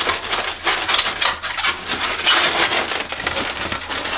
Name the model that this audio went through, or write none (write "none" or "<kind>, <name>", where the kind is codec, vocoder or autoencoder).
none